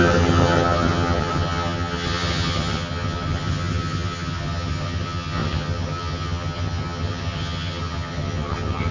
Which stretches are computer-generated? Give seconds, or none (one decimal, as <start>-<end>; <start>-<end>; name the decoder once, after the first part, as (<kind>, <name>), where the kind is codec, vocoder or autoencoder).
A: 0.0-8.9 (vocoder, HiFi-GAN)